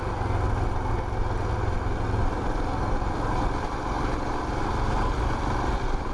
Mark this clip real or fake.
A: real